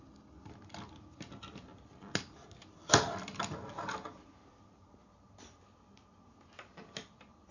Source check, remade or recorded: recorded